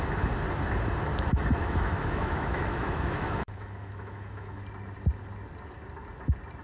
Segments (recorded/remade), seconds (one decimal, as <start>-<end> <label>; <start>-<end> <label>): 0.0-1.6 recorded; 1.6-4.6 remade; 4.6-6.6 recorded